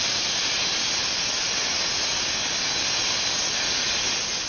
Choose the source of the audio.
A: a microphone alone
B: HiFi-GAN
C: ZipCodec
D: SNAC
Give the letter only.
A